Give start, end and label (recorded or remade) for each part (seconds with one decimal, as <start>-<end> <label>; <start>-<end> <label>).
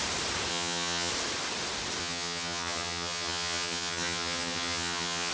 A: 0.0-0.5 recorded; 0.5-1.1 remade; 1.1-2.0 recorded; 2.0-5.3 remade